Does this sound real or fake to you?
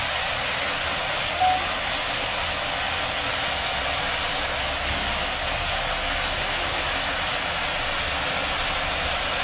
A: real